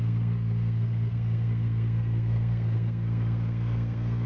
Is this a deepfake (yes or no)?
yes